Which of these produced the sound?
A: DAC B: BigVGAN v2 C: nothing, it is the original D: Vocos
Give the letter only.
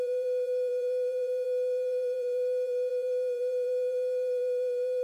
B